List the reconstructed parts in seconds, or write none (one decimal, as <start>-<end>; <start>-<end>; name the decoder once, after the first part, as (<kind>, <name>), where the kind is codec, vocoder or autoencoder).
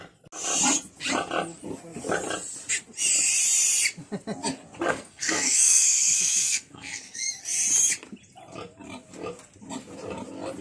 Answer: 4.9-7.3 (codec, SNAC)